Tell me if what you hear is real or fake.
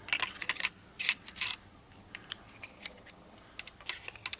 real